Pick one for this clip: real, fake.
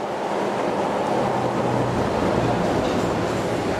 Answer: real